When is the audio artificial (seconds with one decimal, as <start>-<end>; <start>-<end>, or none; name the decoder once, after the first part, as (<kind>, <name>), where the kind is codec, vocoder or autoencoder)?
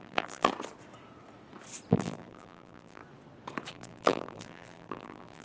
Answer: 0.0-0.5 (vocoder, BigVGAN v2); 1.9-3.0; 3.7-5.4